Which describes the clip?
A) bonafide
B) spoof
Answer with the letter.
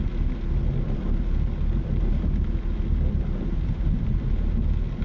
A